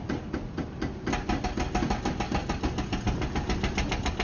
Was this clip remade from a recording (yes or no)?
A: no